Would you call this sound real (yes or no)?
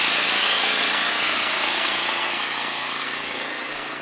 no